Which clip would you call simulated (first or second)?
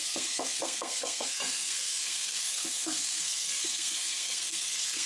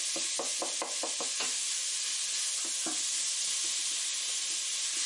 first